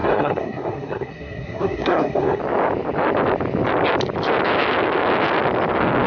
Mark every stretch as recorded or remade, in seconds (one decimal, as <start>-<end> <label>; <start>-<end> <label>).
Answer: 0.0-2.4 remade; 2.4-6.1 recorded